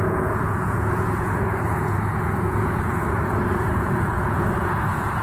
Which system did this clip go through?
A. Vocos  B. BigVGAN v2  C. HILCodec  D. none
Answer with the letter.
A